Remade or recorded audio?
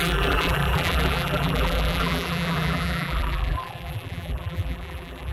remade